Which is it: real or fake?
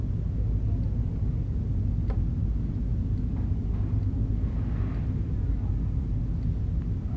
real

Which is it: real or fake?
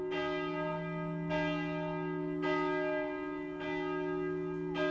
real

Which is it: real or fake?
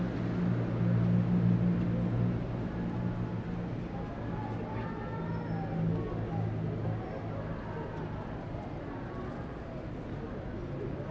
real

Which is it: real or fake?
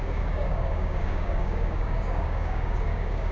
fake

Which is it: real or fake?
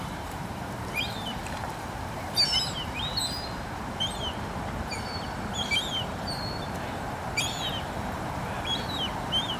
fake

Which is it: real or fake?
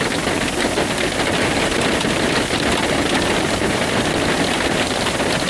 real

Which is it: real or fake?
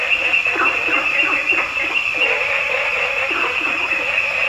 real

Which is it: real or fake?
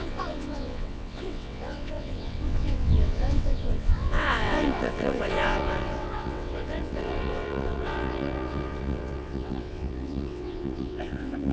fake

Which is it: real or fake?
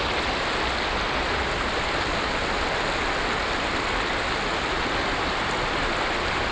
real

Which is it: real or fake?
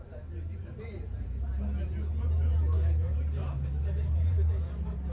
fake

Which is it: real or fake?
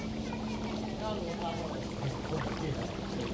real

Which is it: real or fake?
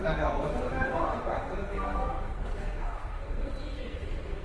fake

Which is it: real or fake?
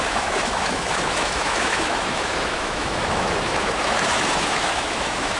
fake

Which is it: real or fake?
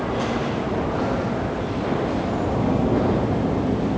real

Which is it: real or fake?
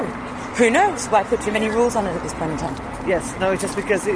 real